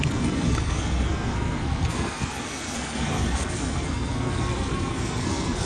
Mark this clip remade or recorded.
remade